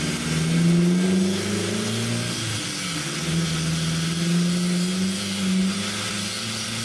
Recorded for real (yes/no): yes